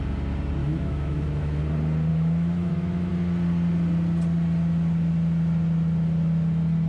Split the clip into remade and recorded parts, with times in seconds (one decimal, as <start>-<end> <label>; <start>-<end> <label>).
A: 0.0-0.6 recorded; 0.6-1.6 remade; 1.6-2.1 recorded; 2.1-3.1 remade; 3.1-6.9 recorded